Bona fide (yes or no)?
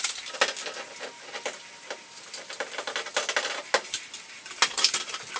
yes